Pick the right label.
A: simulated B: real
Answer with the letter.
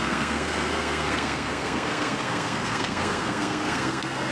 A